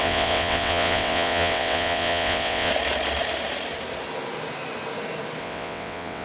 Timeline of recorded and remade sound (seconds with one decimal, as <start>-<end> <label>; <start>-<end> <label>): 0.0-2.7 remade; 2.7-5.4 recorded; 5.4-6.2 remade